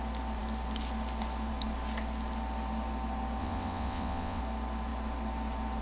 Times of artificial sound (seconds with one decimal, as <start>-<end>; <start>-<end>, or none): 3.4-4.4